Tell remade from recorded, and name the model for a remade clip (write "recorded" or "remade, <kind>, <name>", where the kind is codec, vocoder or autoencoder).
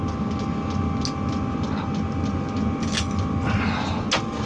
recorded